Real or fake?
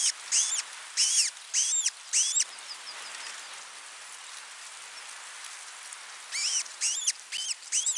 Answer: real